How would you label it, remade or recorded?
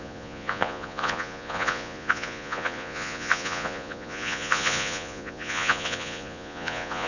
remade